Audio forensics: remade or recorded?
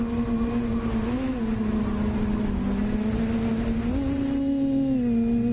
recorded